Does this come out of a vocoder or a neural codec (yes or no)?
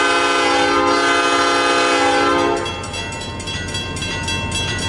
no